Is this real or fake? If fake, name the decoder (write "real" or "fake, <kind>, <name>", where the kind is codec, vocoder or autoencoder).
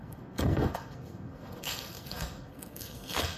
fake, codec, SNAC